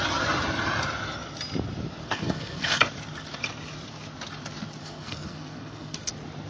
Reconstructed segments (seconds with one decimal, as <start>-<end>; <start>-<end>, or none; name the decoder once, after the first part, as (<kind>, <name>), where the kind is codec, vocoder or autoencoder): 2.0-2.8 (codec, SNAC); 4.8-6.1